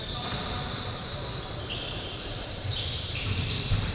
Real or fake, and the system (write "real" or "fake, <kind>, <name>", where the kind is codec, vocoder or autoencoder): fake, vocoder, BigVGAN v2